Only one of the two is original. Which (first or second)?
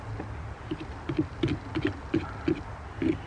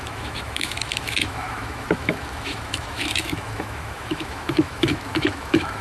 first